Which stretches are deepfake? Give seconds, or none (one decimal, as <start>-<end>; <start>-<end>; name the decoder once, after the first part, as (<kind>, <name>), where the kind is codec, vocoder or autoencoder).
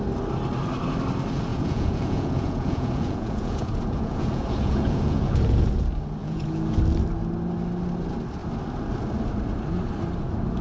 1.5-5.7 (vocoder, Vocos); 6.2-6.8